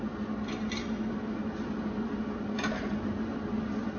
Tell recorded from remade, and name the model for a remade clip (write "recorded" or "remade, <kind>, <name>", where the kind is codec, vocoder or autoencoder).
recorded